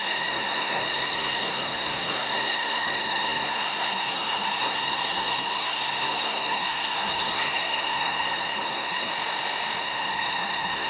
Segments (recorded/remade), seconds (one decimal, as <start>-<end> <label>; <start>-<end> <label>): 0.0-9.1 remade; 9.1-9.8 recorded; 9.8-10.9 remade